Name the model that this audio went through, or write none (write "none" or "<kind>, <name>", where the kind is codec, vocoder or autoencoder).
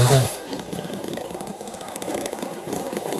codec, SNAC